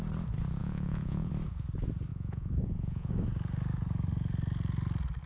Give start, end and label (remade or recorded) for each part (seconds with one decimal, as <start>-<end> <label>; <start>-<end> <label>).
0.0-0.6 recorded; 0.6-1.3 remade; 1.3-2.1 recorded; 2.1-3.1 remade; 3.1-5.3 recorded